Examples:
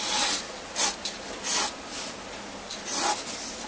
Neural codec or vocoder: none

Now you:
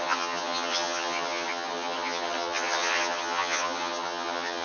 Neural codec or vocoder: vocoder, HiFi-GAN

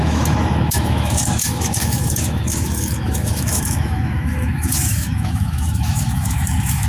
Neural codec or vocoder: autoencoder, DAC-VAE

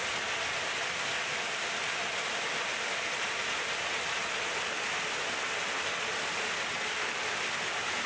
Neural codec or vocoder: none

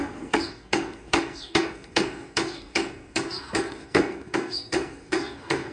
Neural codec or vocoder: codec, SNAC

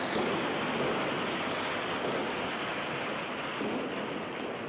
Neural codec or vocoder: none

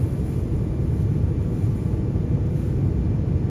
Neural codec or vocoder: none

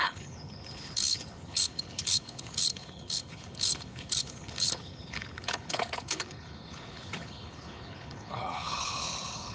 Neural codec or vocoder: codec, HILCodec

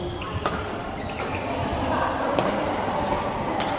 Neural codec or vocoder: none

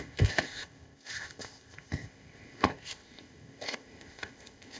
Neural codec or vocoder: codec, ZipCodec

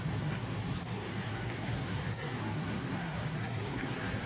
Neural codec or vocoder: codec, SNAC